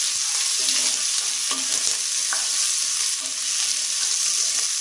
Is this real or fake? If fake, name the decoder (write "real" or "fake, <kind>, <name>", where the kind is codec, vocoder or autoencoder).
real